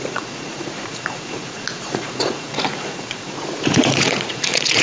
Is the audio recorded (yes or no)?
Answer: no